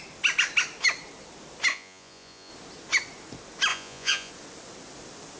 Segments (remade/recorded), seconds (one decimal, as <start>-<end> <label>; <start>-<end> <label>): 0.0-1.7 recorded; 1.7-2.5 remade; 2.5-3.7 recorded; 3.7-4.3 remade; 4.3-5.4 recorded